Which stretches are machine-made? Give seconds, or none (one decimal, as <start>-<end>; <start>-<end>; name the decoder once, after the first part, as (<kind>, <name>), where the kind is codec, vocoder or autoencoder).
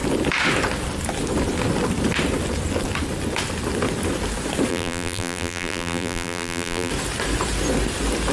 4.7-6.9 (vocoder, BigVGAN v2)